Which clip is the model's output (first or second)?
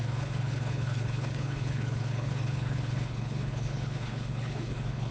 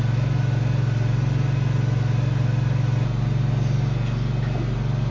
first